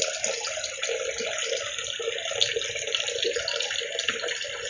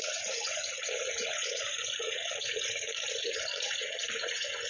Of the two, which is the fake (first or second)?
second